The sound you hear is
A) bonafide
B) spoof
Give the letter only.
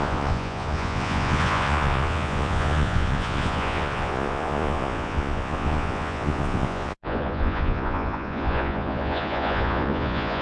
B